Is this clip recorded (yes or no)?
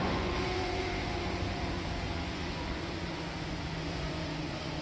no